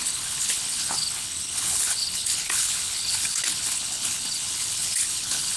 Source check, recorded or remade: remade